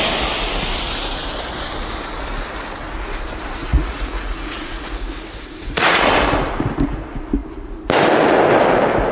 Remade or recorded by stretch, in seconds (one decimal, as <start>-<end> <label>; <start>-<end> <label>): 0.0-3.7 recorded; 3.7-6.1 remade; 6.1-9.1 recorded